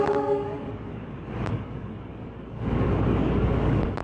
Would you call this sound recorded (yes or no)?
no